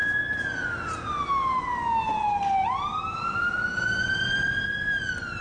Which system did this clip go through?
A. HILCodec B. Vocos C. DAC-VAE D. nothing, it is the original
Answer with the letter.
D